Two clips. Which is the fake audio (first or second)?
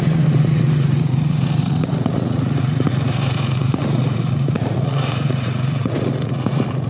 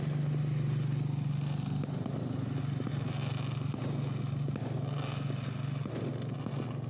first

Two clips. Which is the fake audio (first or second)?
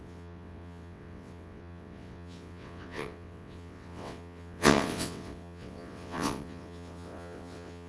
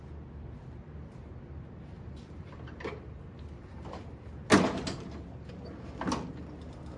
first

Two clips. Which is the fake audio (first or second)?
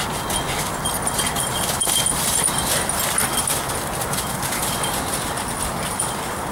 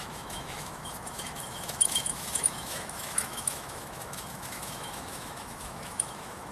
second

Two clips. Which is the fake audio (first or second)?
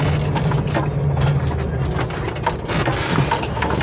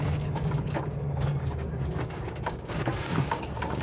second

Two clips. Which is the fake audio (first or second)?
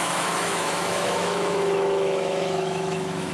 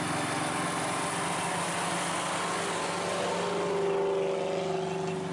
first